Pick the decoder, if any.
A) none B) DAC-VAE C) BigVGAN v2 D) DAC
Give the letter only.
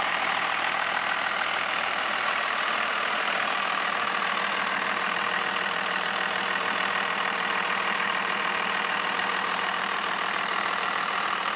C